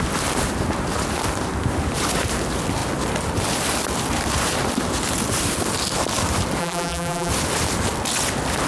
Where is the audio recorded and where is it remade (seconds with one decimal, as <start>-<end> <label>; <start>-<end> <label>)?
0.0-6.6 recorded; 6.6-7.3 remade; 7.3-8.7 recorded